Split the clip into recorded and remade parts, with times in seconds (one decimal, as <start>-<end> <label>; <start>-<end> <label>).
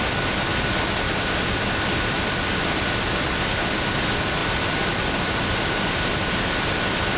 0.0-7.2 recorded